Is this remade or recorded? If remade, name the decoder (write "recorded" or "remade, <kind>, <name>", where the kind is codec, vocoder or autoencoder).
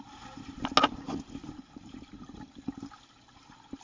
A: recorded